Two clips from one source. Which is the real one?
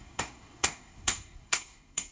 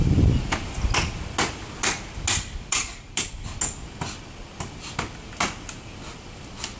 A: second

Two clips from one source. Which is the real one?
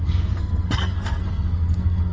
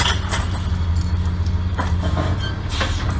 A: second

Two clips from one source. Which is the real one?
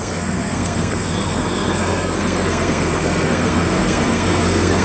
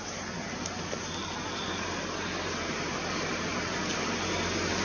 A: second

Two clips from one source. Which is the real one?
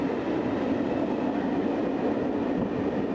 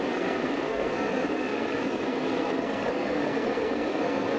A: first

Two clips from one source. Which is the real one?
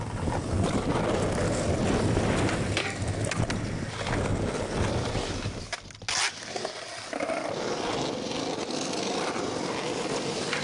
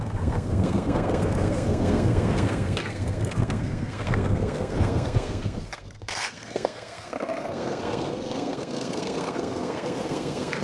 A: first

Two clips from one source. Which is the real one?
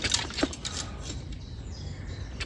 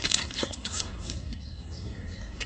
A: first